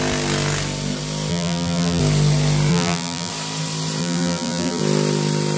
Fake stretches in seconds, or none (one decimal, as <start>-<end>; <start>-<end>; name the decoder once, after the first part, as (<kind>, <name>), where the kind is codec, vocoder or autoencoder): 1.3-2.0 (vocoder, BigVGAN v2); 2.7-3.3; 4.0-4.8